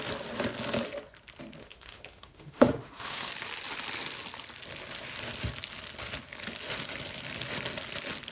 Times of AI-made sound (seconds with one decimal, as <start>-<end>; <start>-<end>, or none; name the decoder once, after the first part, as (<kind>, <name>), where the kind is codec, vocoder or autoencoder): 1.6-3.3 (autoencoder, DAC-VAE)